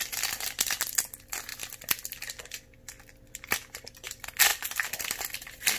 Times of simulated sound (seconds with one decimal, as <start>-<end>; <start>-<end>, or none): 4.5-5.0

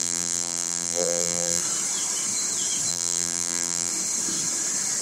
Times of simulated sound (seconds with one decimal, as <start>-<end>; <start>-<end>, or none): 0.0-1.6; 2.9-3.9

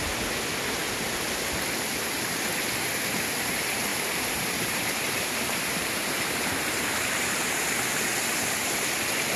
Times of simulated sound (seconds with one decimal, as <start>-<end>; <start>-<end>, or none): 3.9-7.6

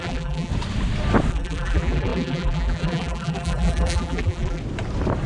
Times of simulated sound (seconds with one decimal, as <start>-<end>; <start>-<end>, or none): 0.0-0.5; 1.3-4.6

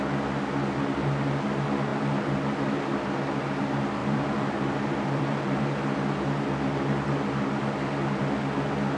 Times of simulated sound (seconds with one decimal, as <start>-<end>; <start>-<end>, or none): 4.0-5.6

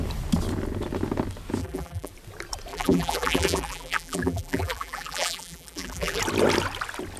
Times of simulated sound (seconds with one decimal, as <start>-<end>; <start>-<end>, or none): 1.6-2.1; 2.7-6.2